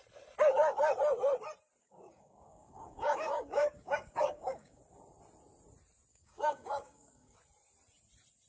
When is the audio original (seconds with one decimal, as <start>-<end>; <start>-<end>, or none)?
0.0-1.8; 4.8-6.1; 7.4-8.5